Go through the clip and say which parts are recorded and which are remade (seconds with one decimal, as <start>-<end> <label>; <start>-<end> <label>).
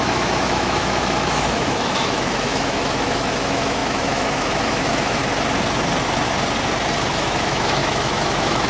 0.0-5.2 remade; 5.2-7.1 recorded; 7.1-8.7 remade